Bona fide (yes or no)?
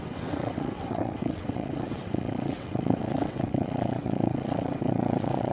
no